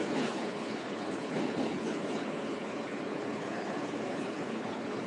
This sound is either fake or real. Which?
fake